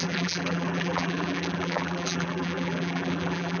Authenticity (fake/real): fake